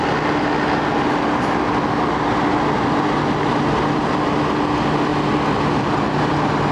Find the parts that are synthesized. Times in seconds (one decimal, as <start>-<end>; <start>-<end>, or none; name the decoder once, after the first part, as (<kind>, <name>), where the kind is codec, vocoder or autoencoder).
none